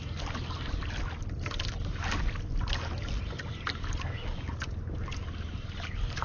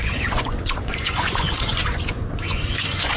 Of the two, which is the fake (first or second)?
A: second